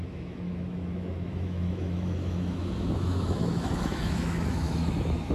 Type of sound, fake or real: fake